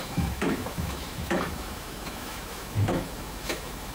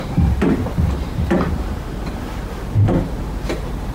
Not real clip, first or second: first